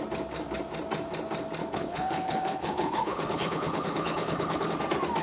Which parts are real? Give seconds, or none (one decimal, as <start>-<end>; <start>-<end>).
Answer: 0.0-1.6; 4.7-5.2